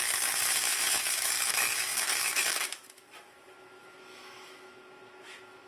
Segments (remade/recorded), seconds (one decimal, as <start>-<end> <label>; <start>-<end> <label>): 0.0-5.7 remade